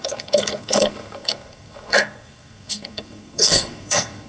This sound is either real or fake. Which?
fake